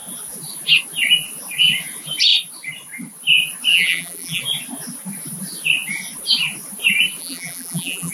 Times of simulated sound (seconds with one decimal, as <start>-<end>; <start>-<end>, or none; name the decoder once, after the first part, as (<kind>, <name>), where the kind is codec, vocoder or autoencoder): 3.7-4.4 (vocoder, BigVGAN v2); 7.2-8.1